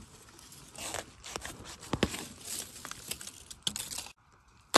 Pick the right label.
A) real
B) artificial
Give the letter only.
A